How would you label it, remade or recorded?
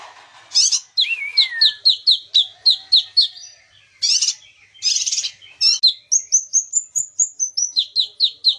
recorded